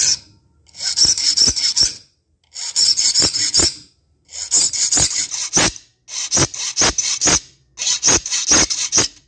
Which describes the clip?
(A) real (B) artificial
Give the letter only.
A